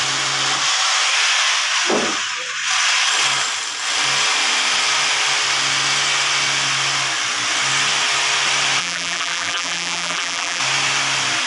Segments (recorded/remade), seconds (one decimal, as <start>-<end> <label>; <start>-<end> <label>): 0.0-8.8 recorded; 8.8-10.6 remade; 10.6-11.5 recorded